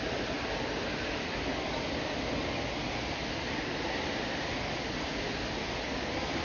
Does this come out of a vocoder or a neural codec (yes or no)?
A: no